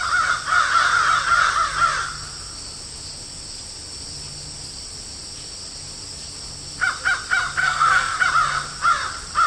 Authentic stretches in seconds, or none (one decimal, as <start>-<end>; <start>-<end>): 0.0-7.6; 8.2-9.5